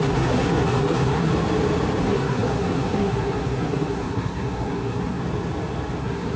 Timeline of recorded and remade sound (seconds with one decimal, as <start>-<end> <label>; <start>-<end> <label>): 0.0-1.3 remade; 1.3-2.0 recorded; 2.0-5.2 remade; 5.2-6.0 recorded; 6.0-6.4 remade